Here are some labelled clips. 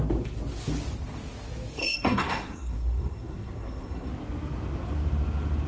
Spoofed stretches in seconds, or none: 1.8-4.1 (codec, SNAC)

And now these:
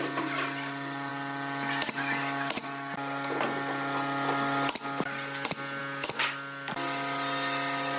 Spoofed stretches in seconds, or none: none